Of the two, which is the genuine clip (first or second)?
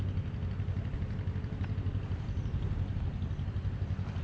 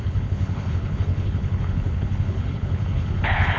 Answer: first